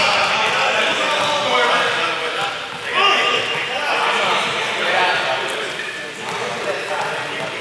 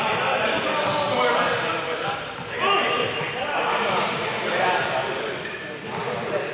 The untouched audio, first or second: first